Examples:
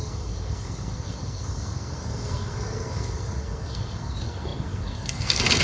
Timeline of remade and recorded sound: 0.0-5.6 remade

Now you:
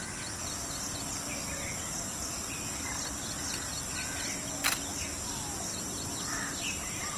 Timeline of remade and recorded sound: 0.0-7.2 recorded

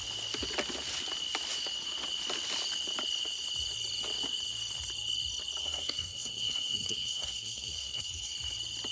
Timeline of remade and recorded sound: 0.0-5.6 recorded; 5.6-8.3 remade; 8.3-8.9 recorded